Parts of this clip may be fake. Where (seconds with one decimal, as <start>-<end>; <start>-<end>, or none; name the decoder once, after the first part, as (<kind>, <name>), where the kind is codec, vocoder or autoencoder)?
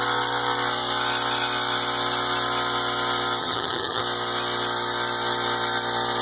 3.4-4.0 (vocoder, HiFi-GAN)